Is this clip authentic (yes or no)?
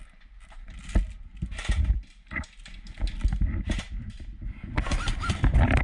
yes